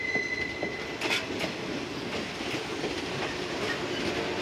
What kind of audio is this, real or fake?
real